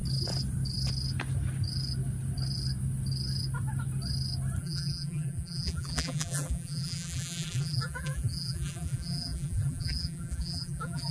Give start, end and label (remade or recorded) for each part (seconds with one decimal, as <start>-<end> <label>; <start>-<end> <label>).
0.0-4.6 recorded; 4.6-11.1 remade